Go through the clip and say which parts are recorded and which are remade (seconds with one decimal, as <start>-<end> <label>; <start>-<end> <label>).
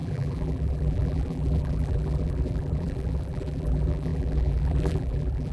0.0-5.5 remade